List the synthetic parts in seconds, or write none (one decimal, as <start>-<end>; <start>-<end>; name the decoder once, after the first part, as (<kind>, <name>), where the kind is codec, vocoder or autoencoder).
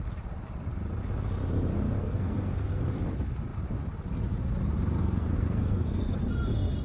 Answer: 1.7-2.9 (codec, SNAC); 5.0-6.2